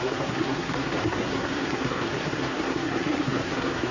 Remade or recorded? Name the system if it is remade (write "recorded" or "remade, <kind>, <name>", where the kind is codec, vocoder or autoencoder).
remade, codec, SNAC